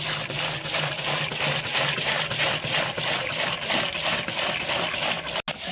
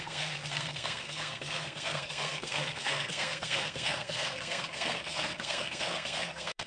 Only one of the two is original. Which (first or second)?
first